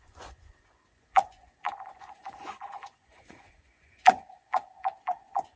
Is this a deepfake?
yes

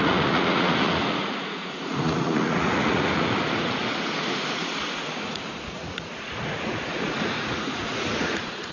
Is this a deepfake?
yes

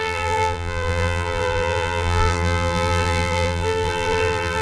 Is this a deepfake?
yes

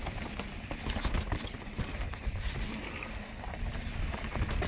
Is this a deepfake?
no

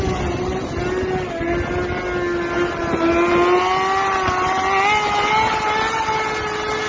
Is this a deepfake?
no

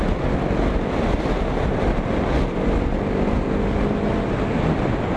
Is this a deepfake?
no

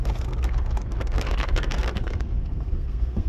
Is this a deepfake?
yes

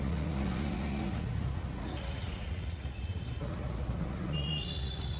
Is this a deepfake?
yes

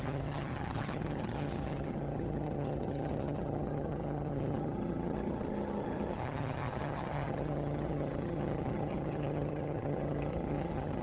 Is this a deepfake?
yes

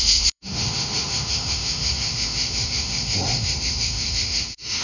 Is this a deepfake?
yes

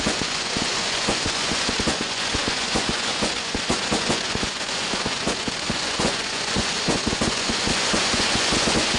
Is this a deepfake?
yes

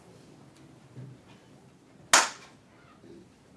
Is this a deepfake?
no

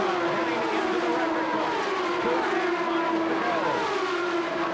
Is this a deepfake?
yes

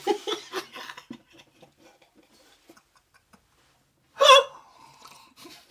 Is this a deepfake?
no